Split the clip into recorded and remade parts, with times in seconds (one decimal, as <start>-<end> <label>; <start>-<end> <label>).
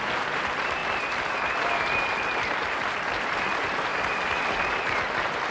0.0-5.5 recorded